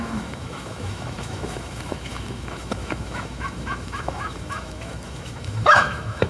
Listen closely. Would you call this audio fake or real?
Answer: fake